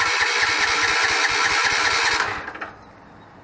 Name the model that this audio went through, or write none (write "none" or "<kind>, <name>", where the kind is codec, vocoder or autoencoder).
none